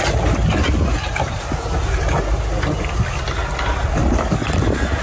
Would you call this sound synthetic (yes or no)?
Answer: no